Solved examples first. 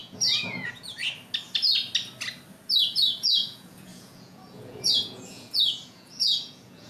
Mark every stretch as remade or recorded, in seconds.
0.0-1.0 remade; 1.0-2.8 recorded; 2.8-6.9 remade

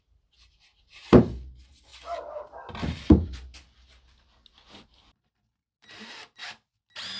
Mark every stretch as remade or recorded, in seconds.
0.0-1.9 remade; 1.9-5.1 recorded; 5.1-6.4 remade; 6.4-7.2 recorded

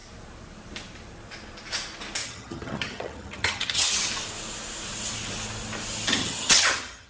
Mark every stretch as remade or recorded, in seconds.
0.0-2.2 recorded; 2.2-4.1 remade; 4.1-6.2 recorded; 6.2-7.1 remade